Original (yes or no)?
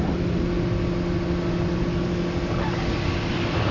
yes